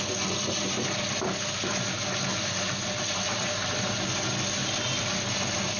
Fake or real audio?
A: real